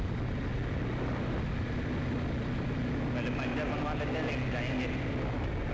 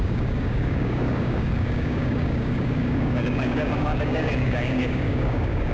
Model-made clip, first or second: second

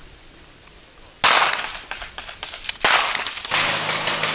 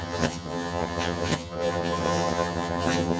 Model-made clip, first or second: second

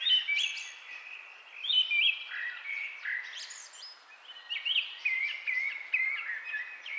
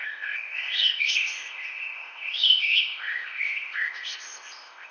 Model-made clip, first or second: second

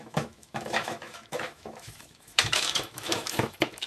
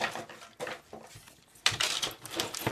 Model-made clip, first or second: first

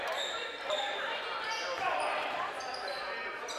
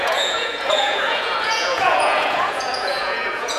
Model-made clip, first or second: second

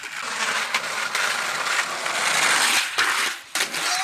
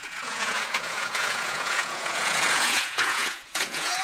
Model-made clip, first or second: second